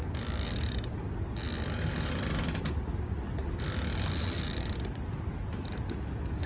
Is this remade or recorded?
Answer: recorded